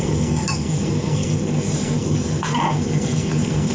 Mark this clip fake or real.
fake